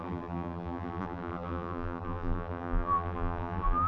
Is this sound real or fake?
fake